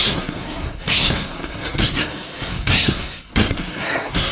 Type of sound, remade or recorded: remade